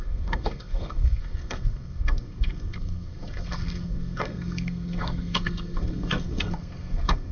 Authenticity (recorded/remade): remade